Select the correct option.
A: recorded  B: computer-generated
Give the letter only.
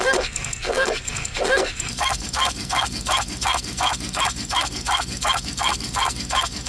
B